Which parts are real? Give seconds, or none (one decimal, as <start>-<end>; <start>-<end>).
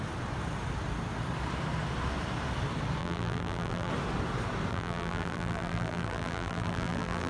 0.0-3.0; 3.9-4.7